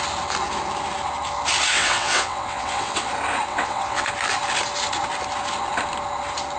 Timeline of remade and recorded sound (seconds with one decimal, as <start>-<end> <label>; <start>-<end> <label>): 0.0-1.7 recorded; 1.7-3.1 remade; 3.1-3.5 recorded; 3.5-4.1 remade; 4.1-6.6 recorded

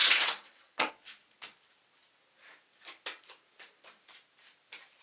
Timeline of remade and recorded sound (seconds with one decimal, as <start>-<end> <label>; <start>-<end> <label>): 0.0-0.9 remade; 0.9-5.0 recorded

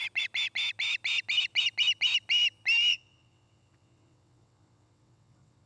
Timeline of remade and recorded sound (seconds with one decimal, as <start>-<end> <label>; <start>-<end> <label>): 0.0-2.9 recorded; 2.9-5.7 remade